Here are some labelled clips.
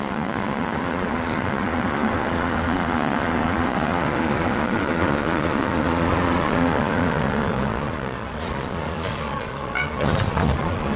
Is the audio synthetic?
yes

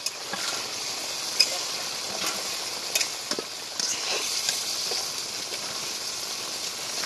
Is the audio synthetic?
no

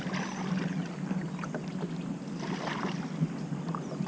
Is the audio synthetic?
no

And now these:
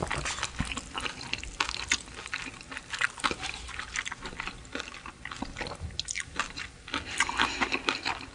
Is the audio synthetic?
no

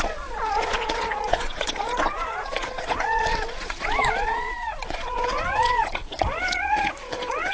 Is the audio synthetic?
yes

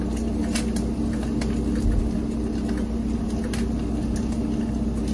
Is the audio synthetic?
no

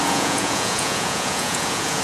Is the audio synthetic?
yes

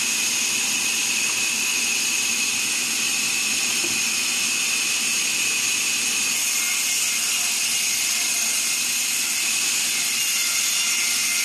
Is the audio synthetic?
no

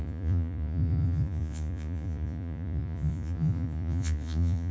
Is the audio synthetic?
yes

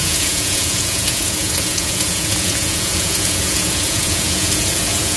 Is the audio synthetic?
yes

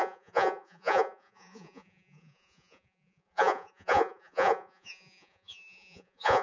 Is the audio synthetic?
yes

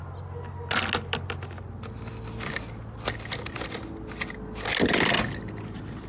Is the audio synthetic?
no